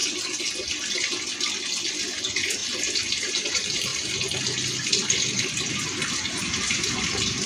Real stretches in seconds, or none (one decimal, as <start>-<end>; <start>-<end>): 0.0-2.2; 3.9-5.7